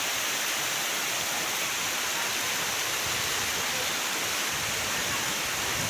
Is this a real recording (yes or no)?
yes